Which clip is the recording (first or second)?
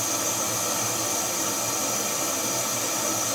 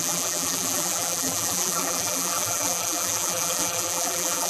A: first